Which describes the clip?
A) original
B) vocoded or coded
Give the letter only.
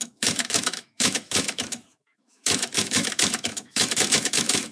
B